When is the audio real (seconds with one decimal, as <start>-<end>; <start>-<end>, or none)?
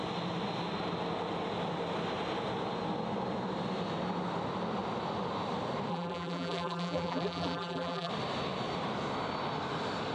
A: 0.0-5.9; 8.1-10.1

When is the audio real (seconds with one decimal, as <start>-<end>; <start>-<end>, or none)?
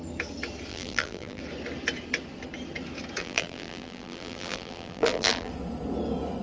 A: 0.0-0.7; 1.4-3.2; 5.5-6.4